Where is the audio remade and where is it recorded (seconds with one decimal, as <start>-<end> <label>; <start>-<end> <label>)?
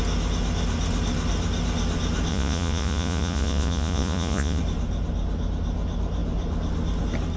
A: 0.0-2.3 recorded; 2.3-4.6 remade; 4.6-7.4 recorded